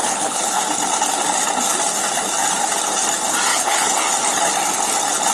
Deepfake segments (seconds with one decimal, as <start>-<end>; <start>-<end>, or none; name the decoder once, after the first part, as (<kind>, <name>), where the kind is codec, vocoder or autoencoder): 0.0-0.6 (codec, HILCodec); 3.5-4.1